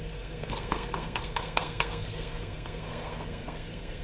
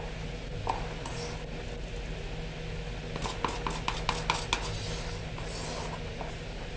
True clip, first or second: second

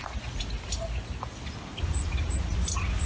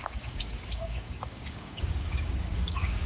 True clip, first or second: first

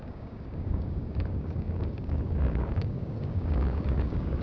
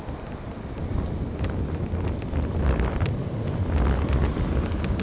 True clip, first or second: second